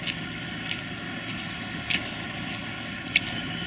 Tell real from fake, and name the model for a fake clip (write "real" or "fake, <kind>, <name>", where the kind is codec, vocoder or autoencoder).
real